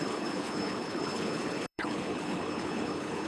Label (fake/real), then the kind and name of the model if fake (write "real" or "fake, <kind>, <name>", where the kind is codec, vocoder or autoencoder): fake, codec, HILCodec